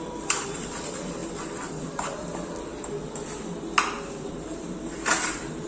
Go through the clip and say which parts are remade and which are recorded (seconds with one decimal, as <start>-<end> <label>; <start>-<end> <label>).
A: 0.0-1.2 remade; 1.2-1.8 recorded; 1.8-2.7 remade; 2.7-4.3 recorded; 4.3-5.7 remade